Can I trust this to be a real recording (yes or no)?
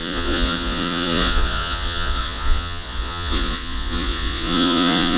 no